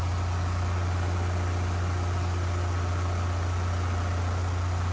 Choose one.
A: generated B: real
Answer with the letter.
B